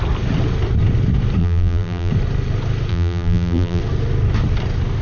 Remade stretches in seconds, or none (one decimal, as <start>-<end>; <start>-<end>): 1.4-2.1; 2.9-3.8

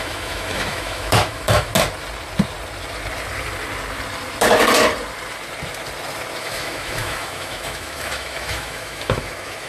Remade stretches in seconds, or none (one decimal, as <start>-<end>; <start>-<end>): 0.0-1.7; 6.4-9.7

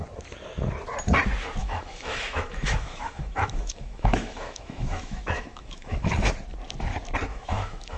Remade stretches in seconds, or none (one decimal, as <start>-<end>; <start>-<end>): 1.6-6.1; 7.3-8.0

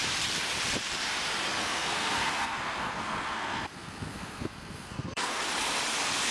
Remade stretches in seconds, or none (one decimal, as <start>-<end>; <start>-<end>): 1.6-5.4